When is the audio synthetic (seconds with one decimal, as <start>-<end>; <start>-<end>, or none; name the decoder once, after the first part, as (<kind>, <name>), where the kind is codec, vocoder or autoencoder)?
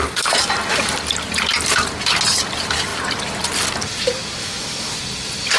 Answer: 4.4-4.9 (autoencoder, DAC-VAE)